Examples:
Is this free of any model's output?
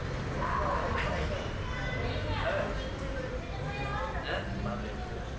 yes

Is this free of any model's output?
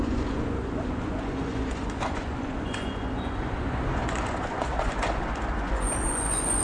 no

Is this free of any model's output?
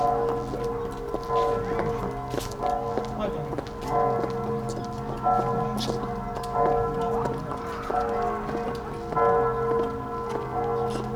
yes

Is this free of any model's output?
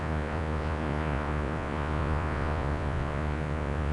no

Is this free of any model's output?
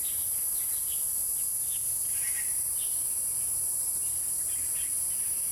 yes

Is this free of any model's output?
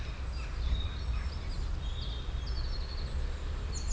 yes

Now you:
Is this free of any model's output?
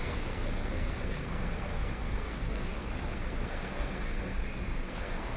no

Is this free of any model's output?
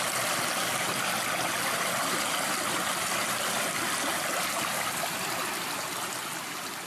yes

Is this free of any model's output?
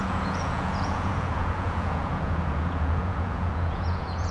no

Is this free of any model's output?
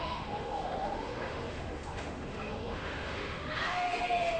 no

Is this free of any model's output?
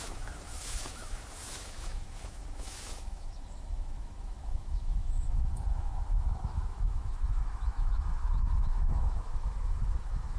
no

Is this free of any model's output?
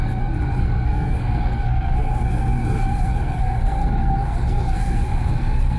no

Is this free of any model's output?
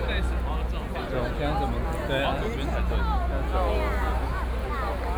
yes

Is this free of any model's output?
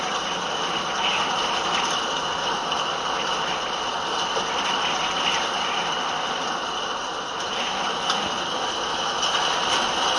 yes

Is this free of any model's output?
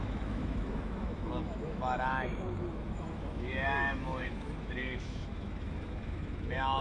no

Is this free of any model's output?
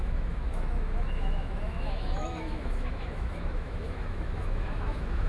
no